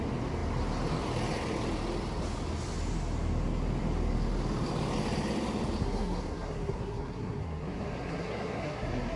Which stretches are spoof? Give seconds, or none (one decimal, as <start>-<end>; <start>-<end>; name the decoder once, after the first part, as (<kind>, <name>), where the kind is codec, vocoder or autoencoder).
5.8-9.2 (codec, SNAC)